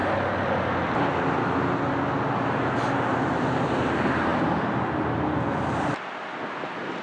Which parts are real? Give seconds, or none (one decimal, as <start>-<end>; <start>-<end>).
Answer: 0.0-7.0